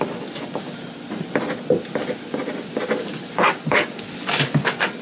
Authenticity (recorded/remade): recorded